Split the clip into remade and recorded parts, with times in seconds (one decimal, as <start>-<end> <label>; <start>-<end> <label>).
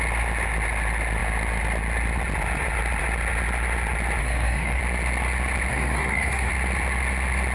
0.0-4.2 recorded; 4.2-4.8 remade; 4.8-5.7 recorded; 5.7-6.5 remade; 6.5-7.5 recorded